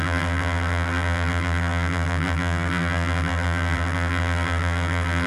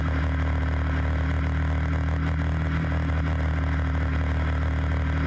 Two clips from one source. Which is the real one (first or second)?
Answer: second